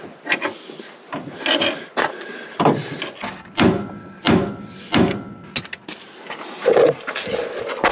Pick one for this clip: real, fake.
real